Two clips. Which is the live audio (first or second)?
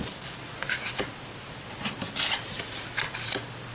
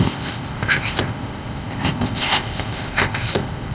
first